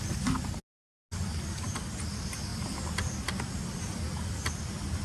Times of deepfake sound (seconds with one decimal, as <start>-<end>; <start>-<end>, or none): none